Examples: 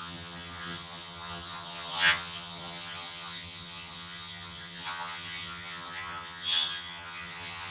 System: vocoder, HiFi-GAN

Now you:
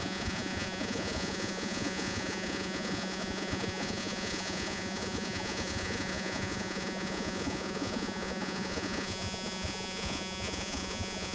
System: vocoder, Vocos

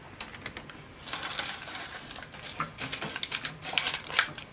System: none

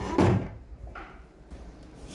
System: vocoder, BigVGAN v2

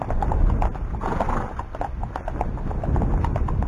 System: none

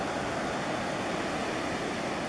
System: none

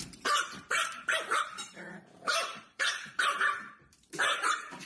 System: vocoder, BigVGAN v2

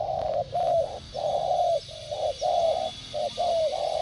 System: none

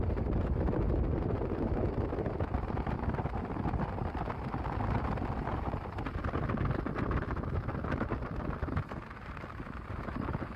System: none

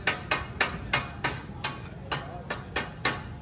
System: none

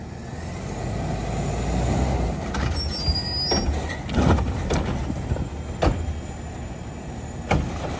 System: none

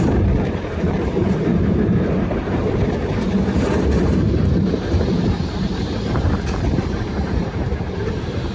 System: vocoder, BigVGAN v2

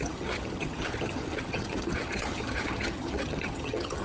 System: vocoder, HiFi-GAN